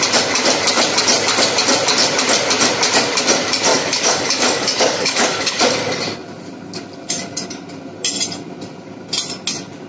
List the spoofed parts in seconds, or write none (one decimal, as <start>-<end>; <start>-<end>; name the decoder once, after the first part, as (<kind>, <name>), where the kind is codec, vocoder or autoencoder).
3.7-5.7 (codec, DAC)